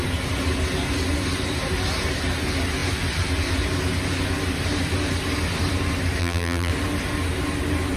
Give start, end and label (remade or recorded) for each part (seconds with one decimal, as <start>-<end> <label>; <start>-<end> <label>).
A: 0.0-6.2 recorded; 6.2-6.7 remade; 6.7-8.0 recorded

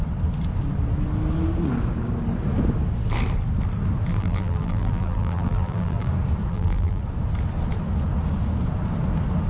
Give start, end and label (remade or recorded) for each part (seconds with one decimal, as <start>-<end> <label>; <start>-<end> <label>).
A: 0.0-4.1 recorded; 4.1-6.1 remade; 6.1-6.5 recorded; 6.5-7.0 remade; 7.0-9.5 recorded

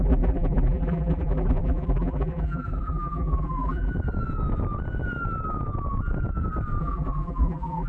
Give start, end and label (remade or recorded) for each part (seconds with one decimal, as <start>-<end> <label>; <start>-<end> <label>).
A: 0.0-3.9 remade; 3.9-6.8 recorded; 6.8-7.9 remade

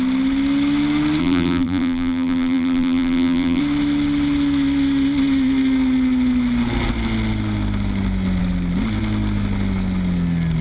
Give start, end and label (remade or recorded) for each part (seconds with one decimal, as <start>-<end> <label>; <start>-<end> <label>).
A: 0.0-1.2 recorded; 1.2-3.6 remade; 3.6-10.6 recorded

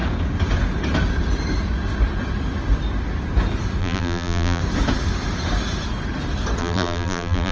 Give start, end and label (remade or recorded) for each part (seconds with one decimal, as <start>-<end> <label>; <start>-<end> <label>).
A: 0.0-3.8 recorded; 3.8-4.6 remade; 4.6-6.6 recorded; 6.6-7.5 remade

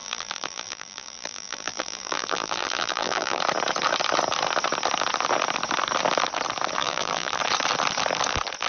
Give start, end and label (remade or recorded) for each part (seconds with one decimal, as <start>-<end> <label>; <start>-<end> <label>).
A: 0.0-3.4 remade; 3.4-6.8 recorded; 6.8-7.4 remade; 7.4-8.7 recorded

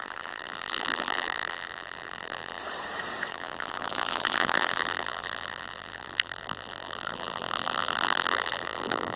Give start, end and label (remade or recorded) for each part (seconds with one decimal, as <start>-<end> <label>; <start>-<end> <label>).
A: 0.0-2.6 remade; 2.6-3.3 recorded; 3.3-9.2 remade